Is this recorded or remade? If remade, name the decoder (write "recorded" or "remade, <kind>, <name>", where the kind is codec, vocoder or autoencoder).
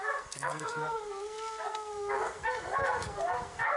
remade, codec, SNAC